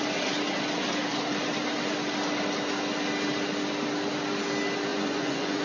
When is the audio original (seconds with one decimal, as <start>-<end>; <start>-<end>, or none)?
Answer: 0.0-4.9